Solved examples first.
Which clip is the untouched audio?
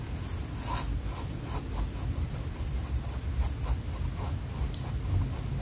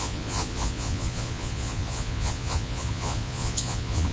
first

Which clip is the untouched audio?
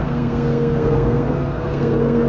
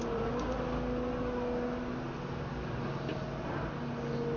second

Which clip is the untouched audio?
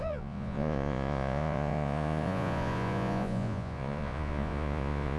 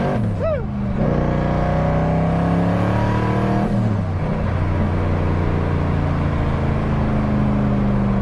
second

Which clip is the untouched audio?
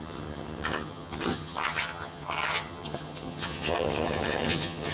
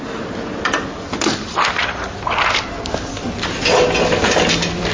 second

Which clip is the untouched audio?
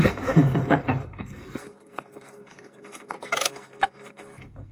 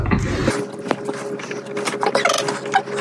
second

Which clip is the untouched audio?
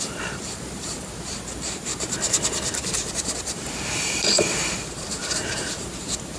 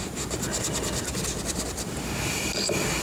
second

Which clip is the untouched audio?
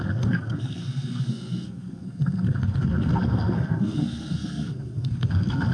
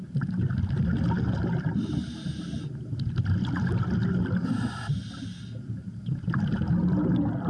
second